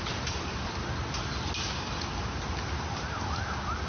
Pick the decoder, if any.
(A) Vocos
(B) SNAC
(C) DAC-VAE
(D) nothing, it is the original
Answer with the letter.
D